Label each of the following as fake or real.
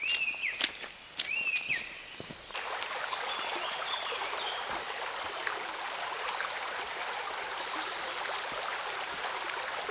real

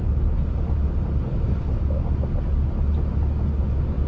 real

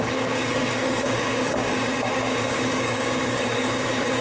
fake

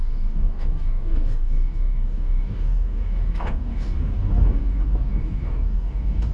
fake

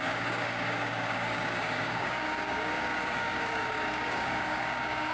fake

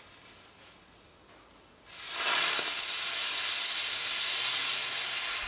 real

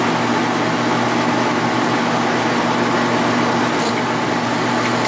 real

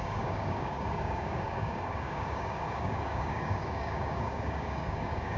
fake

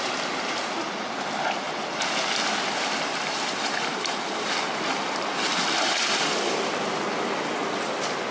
real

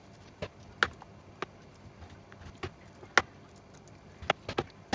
real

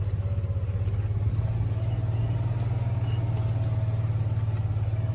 real